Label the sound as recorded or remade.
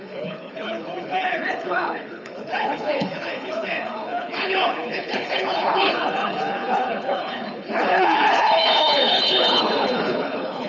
remade